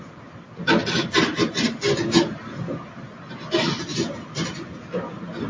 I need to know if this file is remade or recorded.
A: recorded